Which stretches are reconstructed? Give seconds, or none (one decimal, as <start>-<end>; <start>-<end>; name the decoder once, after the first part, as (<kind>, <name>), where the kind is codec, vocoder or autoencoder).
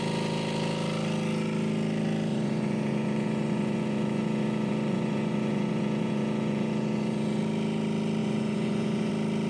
2.3-7.4 (vocoder, Vocos); 8.2-9.1